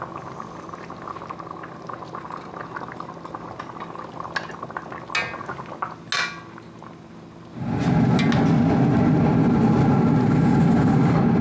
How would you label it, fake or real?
real